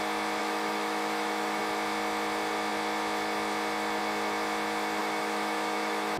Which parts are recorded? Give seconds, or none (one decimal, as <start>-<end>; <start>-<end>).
0.0-0.4; 1.6-5.0